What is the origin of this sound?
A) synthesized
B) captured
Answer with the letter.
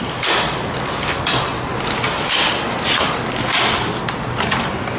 B